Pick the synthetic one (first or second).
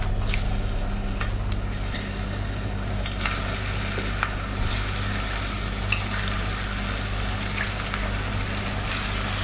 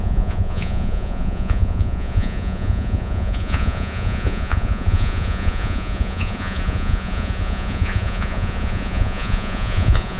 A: second